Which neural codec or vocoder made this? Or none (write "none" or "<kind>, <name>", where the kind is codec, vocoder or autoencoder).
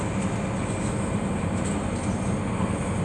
none